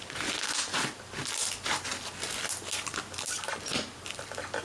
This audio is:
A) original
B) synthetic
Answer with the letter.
A